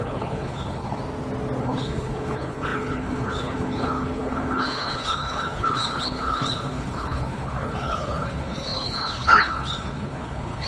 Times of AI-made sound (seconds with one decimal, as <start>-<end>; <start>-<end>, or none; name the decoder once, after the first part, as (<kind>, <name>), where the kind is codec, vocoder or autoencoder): 0.0-1.0 (codec, HILCodec); 1.6-10.7